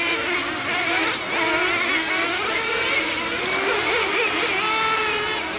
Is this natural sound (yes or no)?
yes